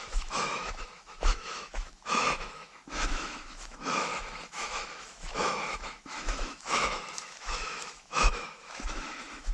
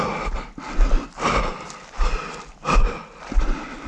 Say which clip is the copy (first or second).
first